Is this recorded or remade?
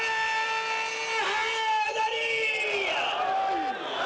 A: recorded